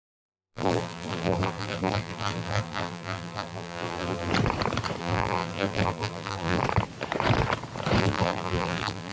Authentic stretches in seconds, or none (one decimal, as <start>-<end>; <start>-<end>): 4.3-5.0; 6.6-8.0